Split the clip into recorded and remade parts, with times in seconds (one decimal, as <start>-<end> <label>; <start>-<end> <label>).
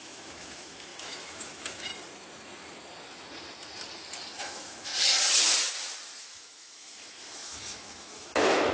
0.0-1.9 remade; 1.9-4.4 recorded; 4.4-4.9 remade; 4.9-6.2 recorded; 6.2-8.7 remade